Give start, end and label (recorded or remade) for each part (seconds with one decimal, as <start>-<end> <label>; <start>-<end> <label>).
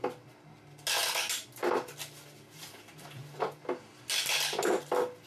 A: 0.0-5.3 recorded